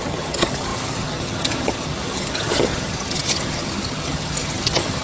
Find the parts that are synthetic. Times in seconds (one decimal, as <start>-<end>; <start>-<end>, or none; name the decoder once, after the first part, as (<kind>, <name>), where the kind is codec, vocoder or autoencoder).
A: 0.0-5.0 (vocoder, HiFi-GAN)